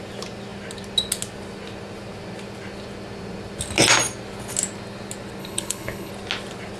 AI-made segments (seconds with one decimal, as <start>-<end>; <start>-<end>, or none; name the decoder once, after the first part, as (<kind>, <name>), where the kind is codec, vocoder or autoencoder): 5.4-6.1 (codec, HILCodec)